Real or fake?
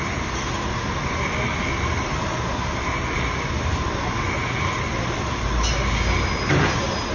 real